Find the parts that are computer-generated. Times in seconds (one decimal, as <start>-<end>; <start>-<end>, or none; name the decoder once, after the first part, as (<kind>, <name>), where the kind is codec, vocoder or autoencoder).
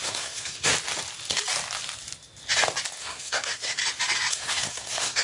0.0-0.7 (codec, SNAC); 3.0-3.8; 4.3-5.2